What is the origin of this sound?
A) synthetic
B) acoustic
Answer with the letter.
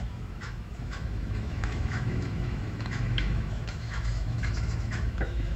A